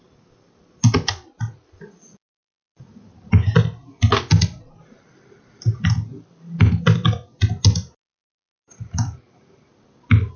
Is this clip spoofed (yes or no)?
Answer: no